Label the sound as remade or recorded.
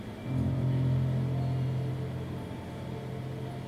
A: recorded